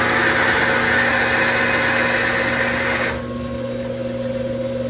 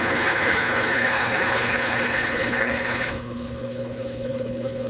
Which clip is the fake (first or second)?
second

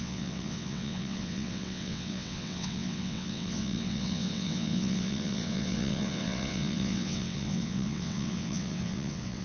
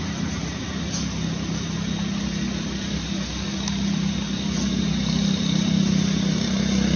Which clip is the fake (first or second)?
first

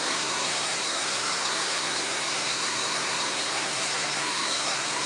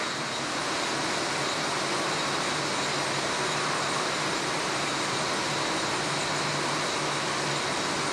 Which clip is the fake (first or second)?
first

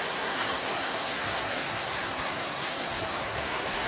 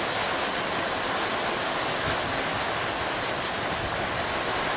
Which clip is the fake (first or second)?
first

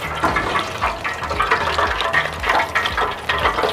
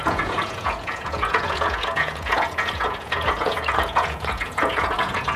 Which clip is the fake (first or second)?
second